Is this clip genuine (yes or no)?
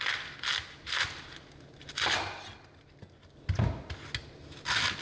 yes